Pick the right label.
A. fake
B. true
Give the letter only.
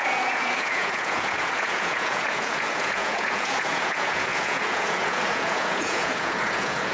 A